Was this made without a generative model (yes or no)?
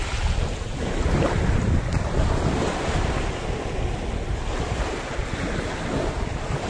yes